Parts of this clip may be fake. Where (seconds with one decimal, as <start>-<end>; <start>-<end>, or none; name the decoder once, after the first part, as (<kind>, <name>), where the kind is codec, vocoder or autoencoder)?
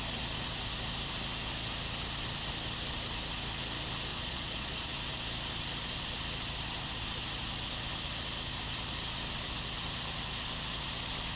4.1-4.9 (vocoder, Vocos)